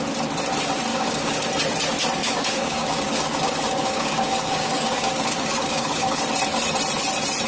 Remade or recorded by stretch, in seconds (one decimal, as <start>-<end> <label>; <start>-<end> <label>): 0.0-0.9 recorded; 0.9-1.5 remade; 1.5-2.2 recorded; 2.2-6.2 remade; 6.2-7.5 recorded